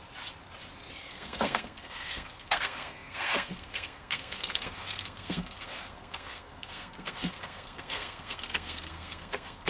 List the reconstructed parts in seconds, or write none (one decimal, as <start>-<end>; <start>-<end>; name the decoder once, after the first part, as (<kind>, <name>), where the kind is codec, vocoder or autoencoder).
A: 1.0-9.7 (codec, SNAC)